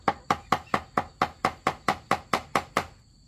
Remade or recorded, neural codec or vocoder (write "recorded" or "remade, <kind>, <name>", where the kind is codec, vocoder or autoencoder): recorded